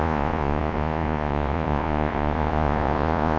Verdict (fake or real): fake